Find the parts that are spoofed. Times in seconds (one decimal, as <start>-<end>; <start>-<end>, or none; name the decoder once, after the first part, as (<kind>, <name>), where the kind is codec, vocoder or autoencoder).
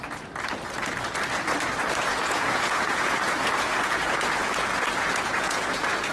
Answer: 2.1-6.1 (vocoder, Vocos)